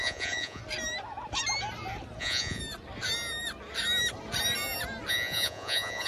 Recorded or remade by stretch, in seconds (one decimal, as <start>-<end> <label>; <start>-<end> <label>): 0.0-0.6 remade; 0.6-2.2 recorded; 2.2-2.6 remade; 2.6-5.1 recorded; 5.1-6.1 remade